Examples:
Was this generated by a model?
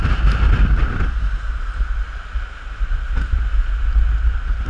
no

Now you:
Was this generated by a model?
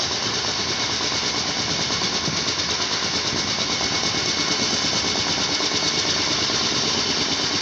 no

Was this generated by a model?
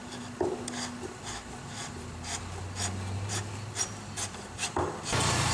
no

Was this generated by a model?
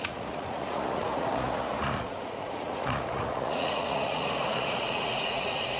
yes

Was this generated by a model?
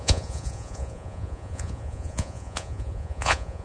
yes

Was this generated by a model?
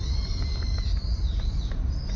no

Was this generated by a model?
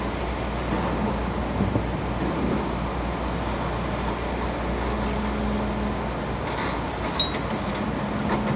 no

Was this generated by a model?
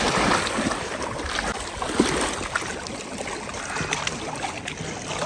no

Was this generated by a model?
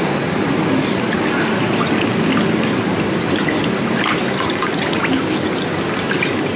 no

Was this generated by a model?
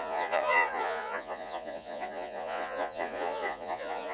yes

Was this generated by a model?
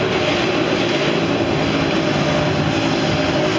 no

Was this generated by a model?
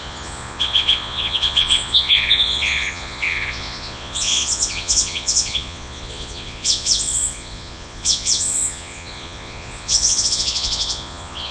yes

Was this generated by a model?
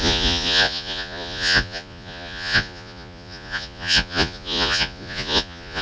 yes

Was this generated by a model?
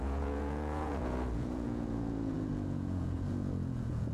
yes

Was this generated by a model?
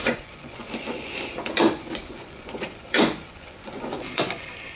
yes